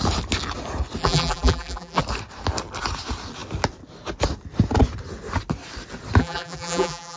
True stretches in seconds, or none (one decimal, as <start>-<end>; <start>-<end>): 0.0-1.0; 2.0-6.2